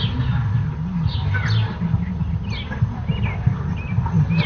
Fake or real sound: real